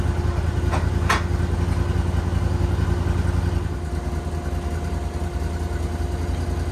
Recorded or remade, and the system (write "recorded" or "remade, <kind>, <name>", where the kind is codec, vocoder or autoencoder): recorded